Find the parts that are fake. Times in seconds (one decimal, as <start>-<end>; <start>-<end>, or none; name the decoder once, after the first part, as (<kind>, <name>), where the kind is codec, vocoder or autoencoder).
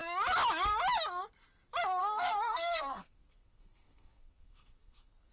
2.0-5.3 (codec, SNAC)